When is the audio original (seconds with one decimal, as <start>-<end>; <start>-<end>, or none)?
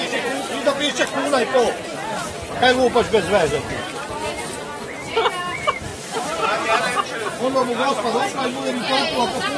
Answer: 0.0-3.6; 4.4-5.9; 6.8-9.6